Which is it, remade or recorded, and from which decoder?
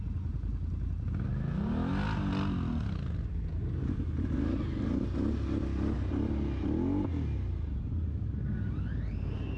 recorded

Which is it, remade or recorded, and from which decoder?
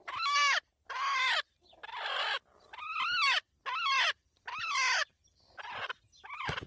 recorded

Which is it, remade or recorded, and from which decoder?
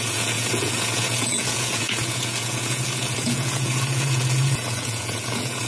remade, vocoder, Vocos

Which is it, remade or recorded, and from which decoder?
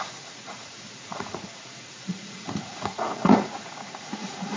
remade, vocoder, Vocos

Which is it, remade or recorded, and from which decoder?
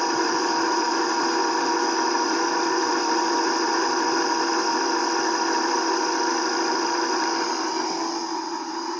remade, vocoder, BigVGAN v2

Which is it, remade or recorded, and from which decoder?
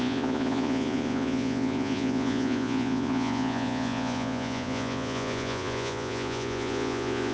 remade, vocoder, Vocos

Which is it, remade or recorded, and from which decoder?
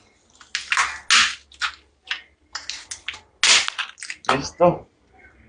recorded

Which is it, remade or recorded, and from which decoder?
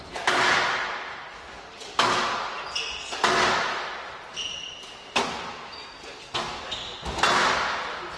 recorded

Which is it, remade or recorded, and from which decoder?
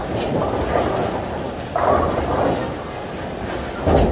recorded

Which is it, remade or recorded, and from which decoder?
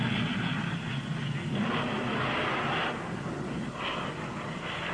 recorded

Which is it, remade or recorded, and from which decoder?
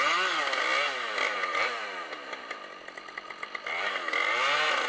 recorded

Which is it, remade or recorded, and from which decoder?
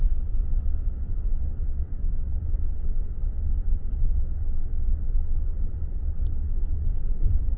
remade, vocoder, WaveNeXt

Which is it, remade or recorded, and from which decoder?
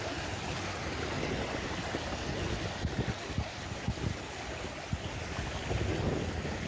recorded